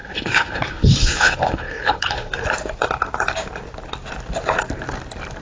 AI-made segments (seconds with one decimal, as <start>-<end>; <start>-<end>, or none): 0.0-2.3